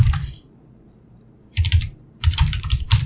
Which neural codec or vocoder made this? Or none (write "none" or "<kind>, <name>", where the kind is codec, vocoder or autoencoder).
vocoder, BigVGAN v2